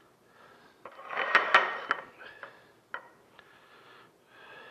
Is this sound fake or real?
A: real